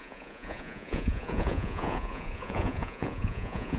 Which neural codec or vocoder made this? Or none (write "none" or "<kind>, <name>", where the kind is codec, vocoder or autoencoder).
vocoder, Vocos